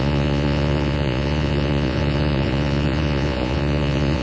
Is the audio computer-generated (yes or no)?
yes